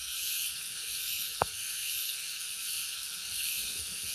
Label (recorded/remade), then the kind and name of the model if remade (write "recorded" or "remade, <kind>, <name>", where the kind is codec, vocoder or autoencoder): remade, codec, SNAC